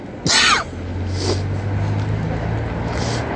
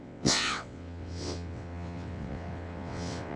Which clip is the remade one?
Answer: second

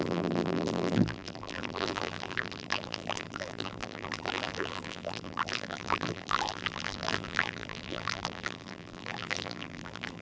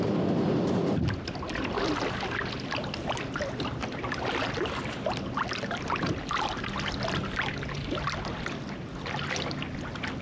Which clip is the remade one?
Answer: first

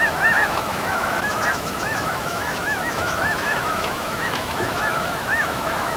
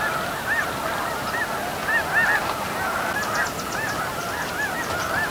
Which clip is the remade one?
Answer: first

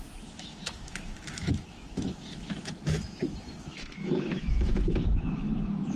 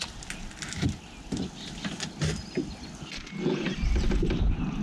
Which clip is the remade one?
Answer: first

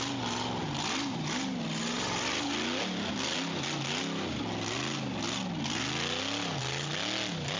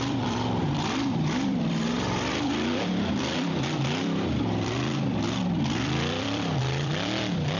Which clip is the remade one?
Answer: second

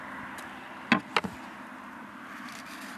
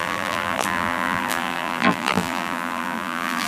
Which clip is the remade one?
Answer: second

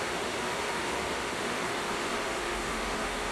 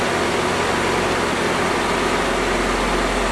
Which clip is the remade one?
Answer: first